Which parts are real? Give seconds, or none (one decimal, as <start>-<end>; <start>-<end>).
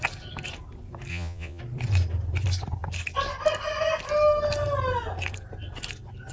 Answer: 0.0-1.1; 1.6-6.3